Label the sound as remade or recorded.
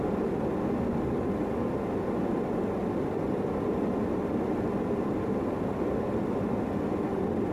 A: recorded